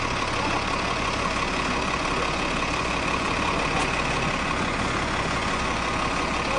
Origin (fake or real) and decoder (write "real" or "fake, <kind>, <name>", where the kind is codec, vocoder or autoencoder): fake, vocoder, Vocos